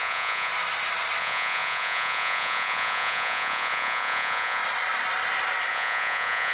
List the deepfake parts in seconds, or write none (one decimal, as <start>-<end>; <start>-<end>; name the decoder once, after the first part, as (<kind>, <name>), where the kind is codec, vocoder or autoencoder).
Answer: 0.0-0.5 (vocoder, Vocos); 1.2-4.6; 5.7-6.5